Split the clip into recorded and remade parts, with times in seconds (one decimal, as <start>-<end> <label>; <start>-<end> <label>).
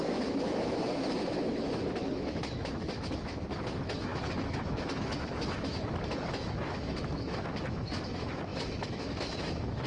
0.0-9.9 remade